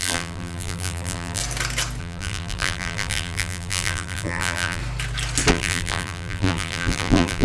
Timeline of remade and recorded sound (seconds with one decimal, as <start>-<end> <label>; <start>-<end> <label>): 0.0-1.4 remade; 1.4-2.0 recorded; 2.0-4.8 remade; 4.8-5.5 recorded; 5.5-7.4 remade